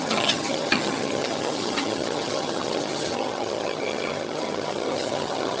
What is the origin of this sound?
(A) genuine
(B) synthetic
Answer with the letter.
B